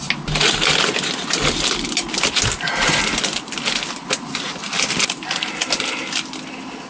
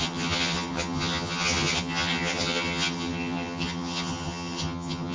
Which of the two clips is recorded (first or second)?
first